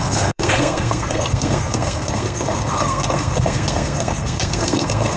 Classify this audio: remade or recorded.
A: remade